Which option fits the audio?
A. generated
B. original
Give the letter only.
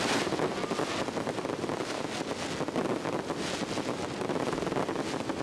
B